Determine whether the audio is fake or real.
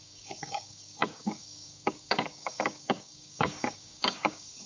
fake